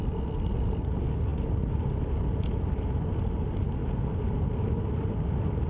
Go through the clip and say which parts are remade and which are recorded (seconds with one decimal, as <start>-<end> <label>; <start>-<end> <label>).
0.0-5.7 recorded